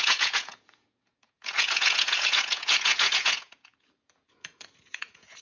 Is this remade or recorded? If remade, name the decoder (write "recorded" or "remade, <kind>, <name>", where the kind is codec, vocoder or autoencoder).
remade, vocoder, Vocos